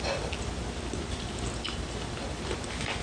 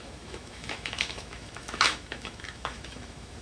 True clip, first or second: first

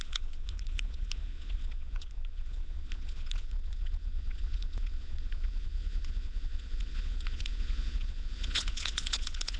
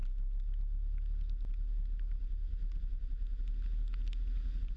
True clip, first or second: second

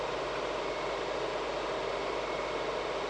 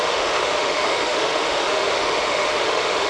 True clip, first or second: first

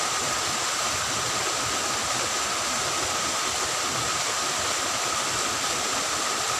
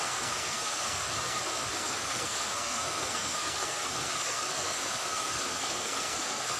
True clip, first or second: first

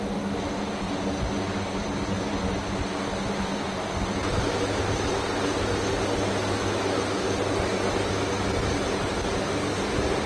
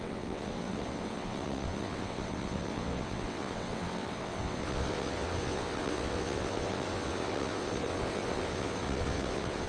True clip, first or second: first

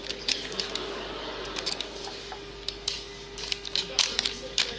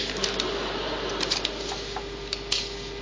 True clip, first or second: second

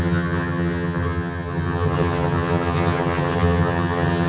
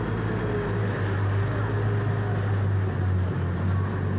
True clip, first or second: second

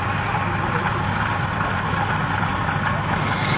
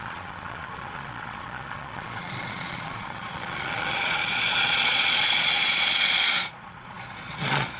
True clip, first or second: first